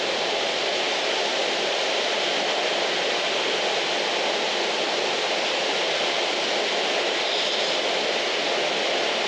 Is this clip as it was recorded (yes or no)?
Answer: yes